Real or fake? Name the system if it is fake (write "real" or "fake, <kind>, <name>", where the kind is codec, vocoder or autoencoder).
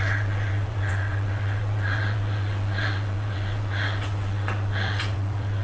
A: fake, vocoder, WaveNeXt